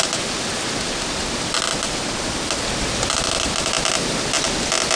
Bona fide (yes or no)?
yes